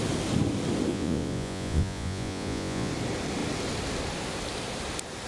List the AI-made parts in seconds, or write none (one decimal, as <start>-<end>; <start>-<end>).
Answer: 0.9-2.9